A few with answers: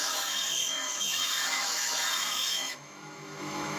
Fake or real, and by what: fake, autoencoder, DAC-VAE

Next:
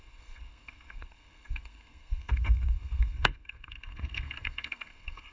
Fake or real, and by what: fake, codec, SNAC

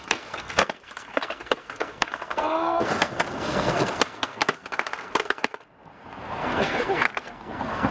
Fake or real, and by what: fake, codec, SNAC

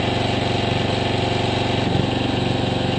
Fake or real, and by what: real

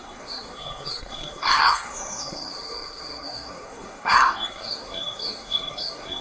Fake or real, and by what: fake, codec, SNAC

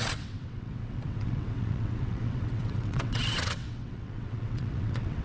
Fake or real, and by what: fake, vocoder, WaveNeXt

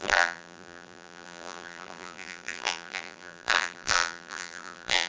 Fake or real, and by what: fake, vocoder, BigVGAN v2